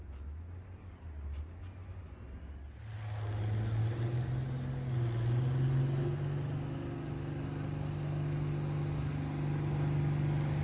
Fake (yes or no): no